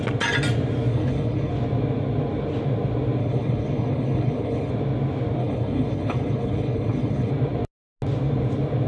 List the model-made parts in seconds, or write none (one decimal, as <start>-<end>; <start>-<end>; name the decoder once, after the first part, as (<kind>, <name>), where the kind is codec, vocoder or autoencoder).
0.9-1.5 (codec, HILCodec); 3.2-4.7; 5.4-7.3

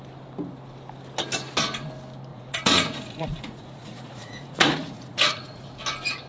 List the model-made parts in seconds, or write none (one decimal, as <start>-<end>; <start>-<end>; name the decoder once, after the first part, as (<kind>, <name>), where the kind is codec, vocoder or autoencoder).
2.3-5.7 (vocoder, Vocos)

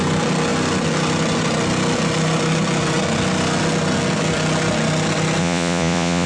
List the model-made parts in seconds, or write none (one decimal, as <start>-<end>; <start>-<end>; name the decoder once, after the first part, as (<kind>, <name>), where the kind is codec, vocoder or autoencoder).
5.4-6.3 (vocoder, Vocos)

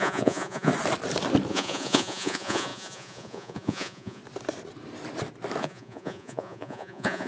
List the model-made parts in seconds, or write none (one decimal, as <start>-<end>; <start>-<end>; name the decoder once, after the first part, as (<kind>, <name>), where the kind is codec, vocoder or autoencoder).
0.0-0.7 (vocoder, Vocos); 1.5-4.2; 5.6-7.3

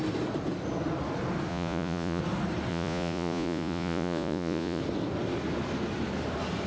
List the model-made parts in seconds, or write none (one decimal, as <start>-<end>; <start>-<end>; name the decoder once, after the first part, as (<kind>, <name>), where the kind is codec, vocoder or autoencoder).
1.5-2.2 (vocoder, Vocos); 2.7-4.8

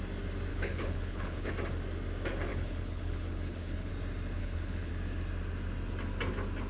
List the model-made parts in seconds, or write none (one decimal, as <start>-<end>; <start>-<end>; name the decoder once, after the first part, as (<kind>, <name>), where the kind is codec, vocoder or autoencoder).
0.5-1.5 (codec, HILCodec); 2.5-3.9; 4.4-4.9

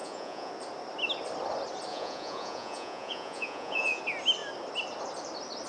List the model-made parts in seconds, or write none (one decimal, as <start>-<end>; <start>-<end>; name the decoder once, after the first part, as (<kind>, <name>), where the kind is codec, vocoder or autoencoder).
0.0-0.5 (vocoder, Vocos); 1.9-4.0